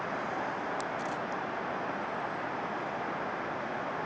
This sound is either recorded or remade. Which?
recorded